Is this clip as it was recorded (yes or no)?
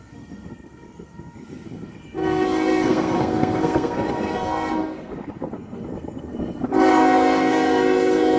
no